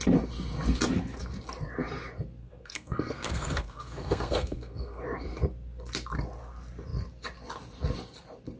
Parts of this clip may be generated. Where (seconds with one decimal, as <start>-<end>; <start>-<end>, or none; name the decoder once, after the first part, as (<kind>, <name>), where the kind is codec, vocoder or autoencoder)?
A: 2.4-5.0 (codec, SNAC)